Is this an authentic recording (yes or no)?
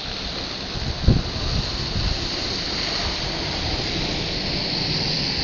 yes